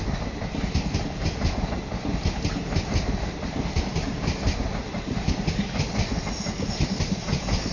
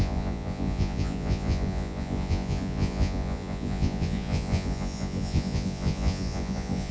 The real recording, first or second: first